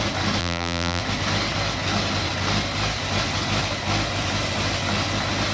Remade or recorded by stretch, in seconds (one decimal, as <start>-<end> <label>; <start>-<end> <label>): 0.0-0.4 recorded; 0.4-1.0 remade; 1.0-5.5 recorded